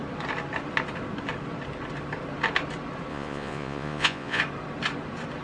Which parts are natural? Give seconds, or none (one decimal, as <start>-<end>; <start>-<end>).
0.0-3.1; 4.4-5.4